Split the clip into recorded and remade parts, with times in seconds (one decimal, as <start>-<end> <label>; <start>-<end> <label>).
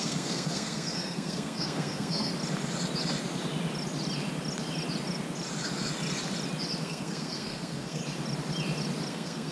0.0-2.3 remade; 2.3-6.8 recorded; 6.8-8.0 remade; 8.0-9.1 recorded; 9.1-9.5 remade